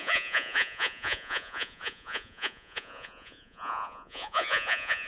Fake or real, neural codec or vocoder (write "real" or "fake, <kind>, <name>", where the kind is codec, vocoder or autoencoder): fake, vocoder, Vocos